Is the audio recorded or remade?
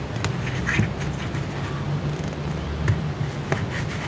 recorded